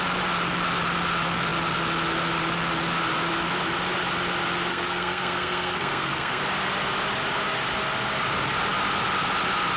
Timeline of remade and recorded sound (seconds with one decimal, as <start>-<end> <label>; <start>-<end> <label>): 0.0-4.7 recorded; 4.7-6.4 remade; 6.4-9.8 recorded